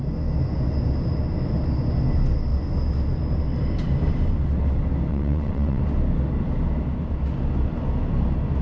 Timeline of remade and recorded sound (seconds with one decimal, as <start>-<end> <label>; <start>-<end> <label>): 0.0-5.1 recorded; 5.1-5.8 remade; 5.8-8.6 recorded